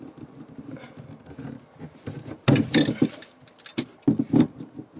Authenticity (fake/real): real